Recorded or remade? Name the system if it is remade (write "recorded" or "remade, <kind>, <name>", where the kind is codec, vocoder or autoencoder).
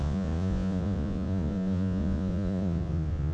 remade, vocoder, Vocos